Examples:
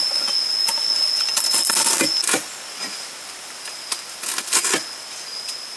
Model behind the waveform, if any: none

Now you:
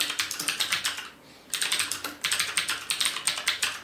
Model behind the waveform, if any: none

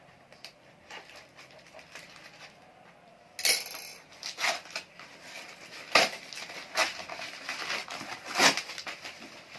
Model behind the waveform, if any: none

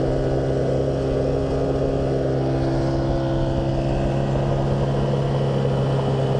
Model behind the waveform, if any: none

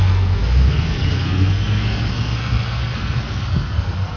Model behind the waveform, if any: codec, SNAC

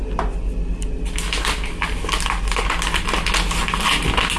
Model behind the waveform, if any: none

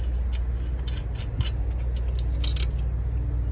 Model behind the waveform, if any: none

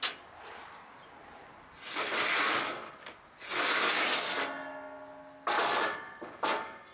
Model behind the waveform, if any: none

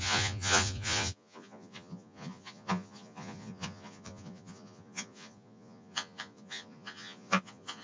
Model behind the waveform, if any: vocoder, Vocos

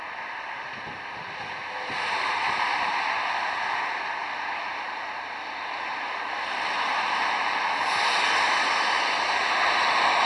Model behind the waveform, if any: none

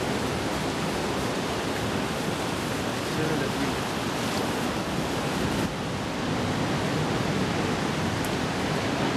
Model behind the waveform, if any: none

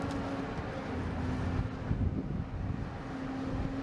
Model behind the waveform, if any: none